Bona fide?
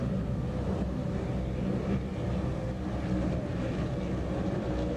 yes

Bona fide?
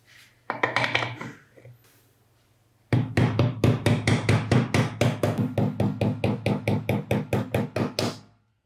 yes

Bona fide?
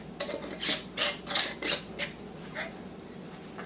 yes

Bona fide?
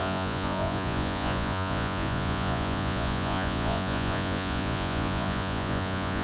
no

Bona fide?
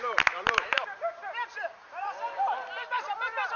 no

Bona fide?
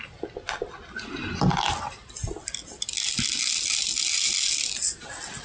yes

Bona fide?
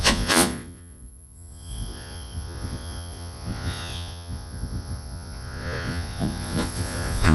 no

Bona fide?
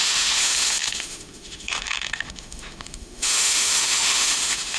no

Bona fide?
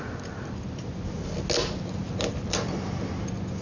yes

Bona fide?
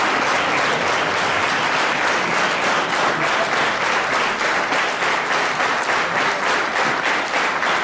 yes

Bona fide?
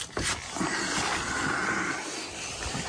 yes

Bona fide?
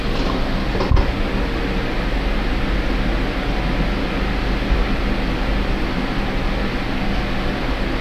yes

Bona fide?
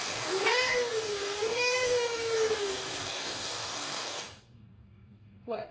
no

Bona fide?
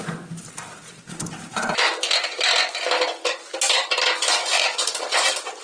yes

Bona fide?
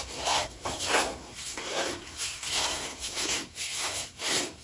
no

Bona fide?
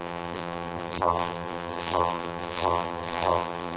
no